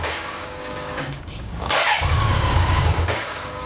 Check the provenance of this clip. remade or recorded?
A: remade